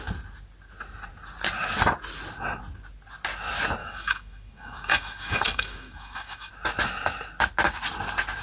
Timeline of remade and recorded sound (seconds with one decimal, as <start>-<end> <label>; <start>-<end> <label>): 0.0-3.8 recorded; 3.8-6.5 remade; 6.5-8.4 recorded